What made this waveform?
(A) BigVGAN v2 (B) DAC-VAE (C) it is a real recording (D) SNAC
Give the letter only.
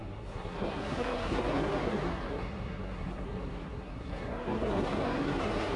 D